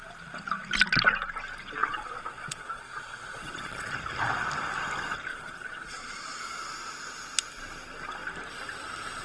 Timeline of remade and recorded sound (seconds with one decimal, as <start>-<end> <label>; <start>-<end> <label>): 0.0-1.8 recorded; 1.8-3.9 remade; 3.9-5.3 recorded; 5.3-6.4 remade; 6.4-9.2 recorded